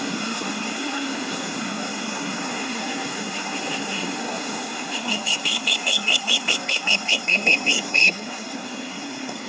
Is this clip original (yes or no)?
no